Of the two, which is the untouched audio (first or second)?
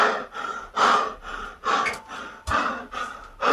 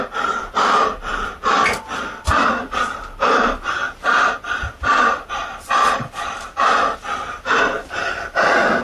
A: first